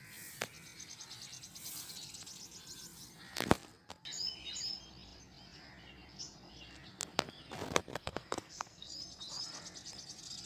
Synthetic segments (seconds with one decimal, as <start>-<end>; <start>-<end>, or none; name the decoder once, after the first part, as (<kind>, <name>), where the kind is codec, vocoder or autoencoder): 7.9-8.9 (codec, SNAC)